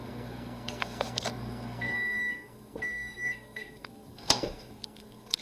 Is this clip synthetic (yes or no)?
yes